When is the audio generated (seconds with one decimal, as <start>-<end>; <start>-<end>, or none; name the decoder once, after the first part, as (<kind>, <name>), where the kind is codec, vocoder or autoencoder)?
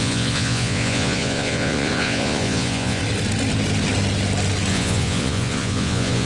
0.0-3.0 (vocoder, Vocos); 4.7-6.3